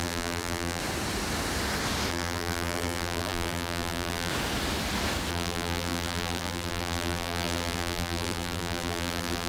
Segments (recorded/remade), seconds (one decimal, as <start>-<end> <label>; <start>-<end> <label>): 0.0-0.8 remade; 0.8-2.1 recorded; 2.1-4.3 remade; 4.3-5.3 recorded; 5.3-9.5 remade